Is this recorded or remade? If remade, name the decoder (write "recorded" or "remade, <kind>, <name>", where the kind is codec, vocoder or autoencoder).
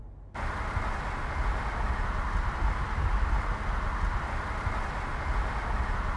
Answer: recorded